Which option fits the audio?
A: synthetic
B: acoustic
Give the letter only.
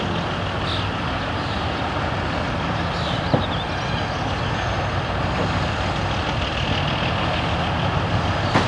B